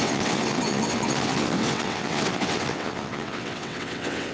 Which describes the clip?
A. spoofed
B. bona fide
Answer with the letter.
A